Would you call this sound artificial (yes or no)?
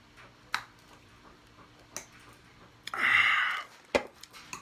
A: no